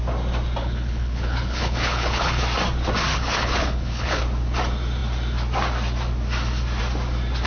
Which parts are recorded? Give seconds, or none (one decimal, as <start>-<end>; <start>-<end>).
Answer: 0.0-0.6; 2.4-3.1; 4.2-7.5

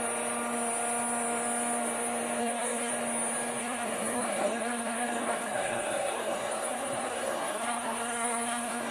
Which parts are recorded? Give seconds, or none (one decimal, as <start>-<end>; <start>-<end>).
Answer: 0.0-2.4; 2.9-3.6

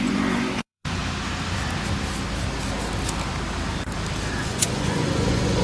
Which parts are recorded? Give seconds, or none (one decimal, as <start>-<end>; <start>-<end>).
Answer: 1.0-4.4

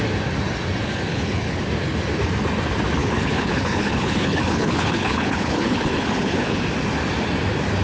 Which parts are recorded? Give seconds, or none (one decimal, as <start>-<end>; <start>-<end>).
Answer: 0.0-1.1; 1.6-3.0; 6.6-7.8

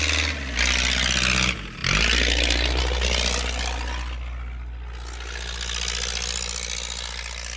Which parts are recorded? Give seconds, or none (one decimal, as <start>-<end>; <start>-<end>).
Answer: 0.0-7.6

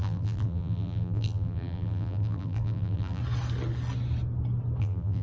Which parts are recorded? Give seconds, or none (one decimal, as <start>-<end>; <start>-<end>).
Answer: 3.2-4.8